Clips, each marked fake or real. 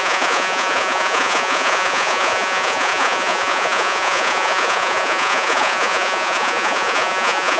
fake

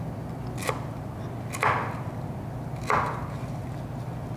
real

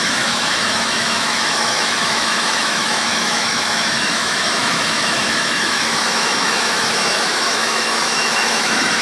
fake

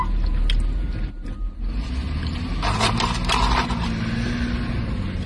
real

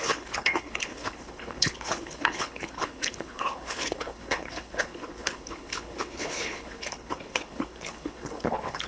fake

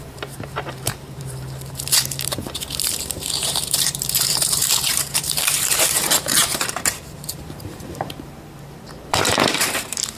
fake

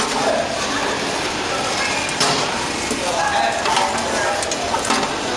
real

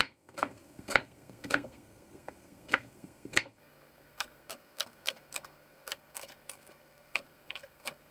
fake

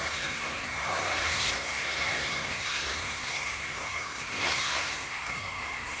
fake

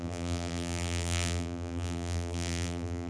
fake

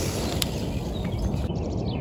real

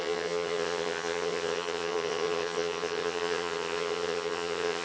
fake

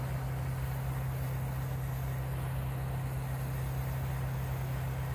real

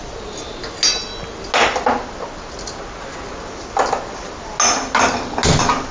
real